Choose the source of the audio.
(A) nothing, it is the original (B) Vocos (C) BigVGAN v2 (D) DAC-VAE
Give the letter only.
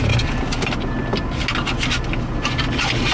A